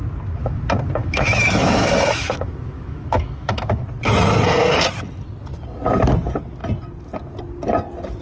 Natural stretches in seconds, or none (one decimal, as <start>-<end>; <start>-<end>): 0.0-1.0; 3.8-8.2